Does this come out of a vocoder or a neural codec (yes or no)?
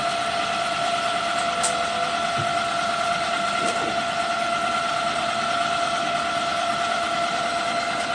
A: no